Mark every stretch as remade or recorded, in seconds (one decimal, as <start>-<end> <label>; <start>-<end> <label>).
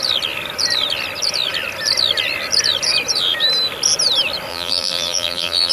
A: 0.0-4.5 recorded; 4.5-5.7 remade